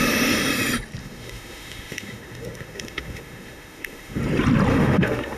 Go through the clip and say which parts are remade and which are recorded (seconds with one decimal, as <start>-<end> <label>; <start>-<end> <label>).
0.0-1.0 recorded; 1.0-4.2 remade; 4.2-4.7 recorded; 4.7-5.4 remade